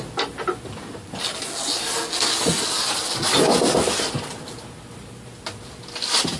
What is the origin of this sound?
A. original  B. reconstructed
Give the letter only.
A